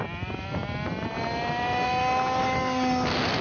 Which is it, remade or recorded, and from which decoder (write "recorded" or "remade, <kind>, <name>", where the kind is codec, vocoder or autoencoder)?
recorded